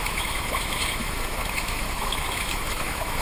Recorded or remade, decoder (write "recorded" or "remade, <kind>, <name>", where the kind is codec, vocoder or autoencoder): remade, autoencoder, DAC-VAE